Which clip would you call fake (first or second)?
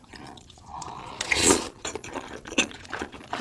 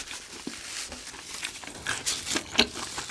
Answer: first